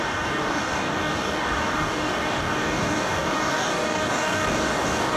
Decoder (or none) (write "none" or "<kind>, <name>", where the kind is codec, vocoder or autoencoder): codec, DAC